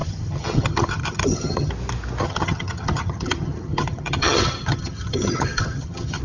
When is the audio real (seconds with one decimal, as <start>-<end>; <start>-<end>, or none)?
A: 1.7-2.2